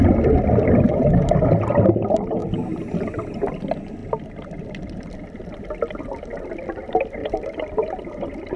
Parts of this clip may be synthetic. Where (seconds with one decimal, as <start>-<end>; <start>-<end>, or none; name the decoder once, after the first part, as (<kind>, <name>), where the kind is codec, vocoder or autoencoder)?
4.0-5.5 (vocoder, BigVGAN v2); 7.2-8.0